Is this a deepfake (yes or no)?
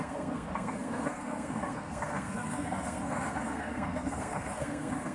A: yes